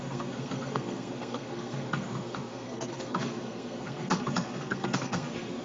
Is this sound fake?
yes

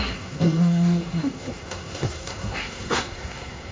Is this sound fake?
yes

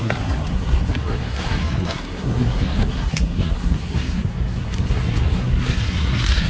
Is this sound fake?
yes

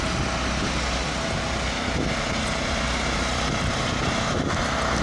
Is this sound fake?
no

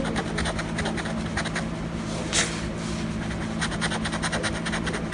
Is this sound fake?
no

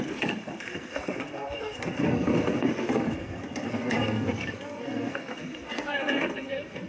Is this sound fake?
yes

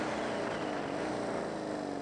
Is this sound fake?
no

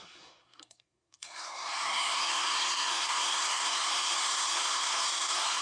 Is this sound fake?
yes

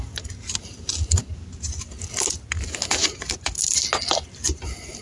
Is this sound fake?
no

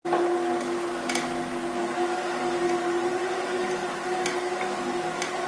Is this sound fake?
no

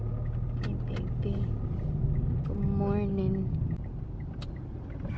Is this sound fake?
no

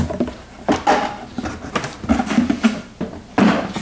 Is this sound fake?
no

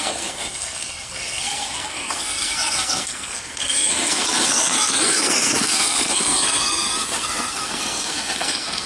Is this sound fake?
yes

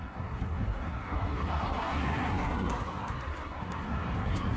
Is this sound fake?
yes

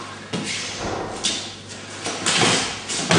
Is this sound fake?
no